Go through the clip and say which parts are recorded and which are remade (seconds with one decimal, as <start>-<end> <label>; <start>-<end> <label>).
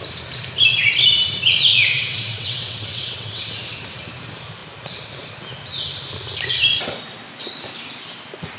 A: 0.0-1.7 recorded; 1.7-3.5 remade; 3.5-8.6 recorded